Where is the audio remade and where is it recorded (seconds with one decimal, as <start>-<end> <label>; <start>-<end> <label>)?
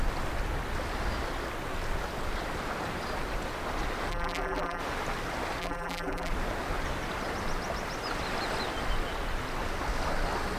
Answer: 0.0-4.1 recorded; 4.1-4.8 remade; 4.8-5.6 recorded; 5.6-6.3 remade; 6.3-10.6 recorded